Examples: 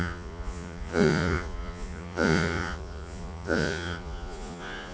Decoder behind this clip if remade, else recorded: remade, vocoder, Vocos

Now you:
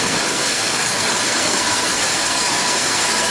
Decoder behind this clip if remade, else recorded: remade, codec, SNAC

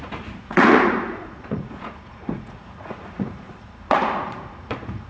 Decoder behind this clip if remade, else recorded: remade, vocoder, Vocos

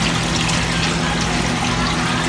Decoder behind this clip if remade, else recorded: recorded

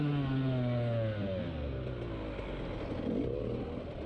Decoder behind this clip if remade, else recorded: recorded